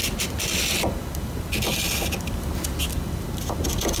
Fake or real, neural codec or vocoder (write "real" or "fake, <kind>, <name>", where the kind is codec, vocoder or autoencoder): real